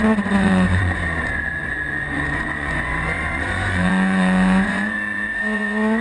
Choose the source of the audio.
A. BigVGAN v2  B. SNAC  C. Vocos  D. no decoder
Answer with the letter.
C